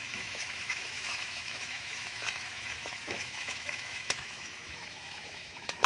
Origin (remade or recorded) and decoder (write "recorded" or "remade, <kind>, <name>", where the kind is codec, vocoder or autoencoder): remade, autoencoder, DAC-VAE